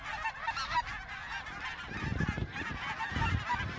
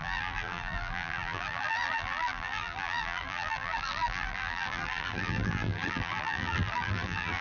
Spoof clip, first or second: second